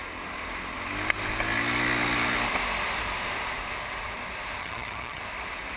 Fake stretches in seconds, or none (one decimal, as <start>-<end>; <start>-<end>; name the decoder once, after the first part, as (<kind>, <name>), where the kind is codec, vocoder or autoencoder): 4.6-5.2 (vocoder, HiFi-GAN)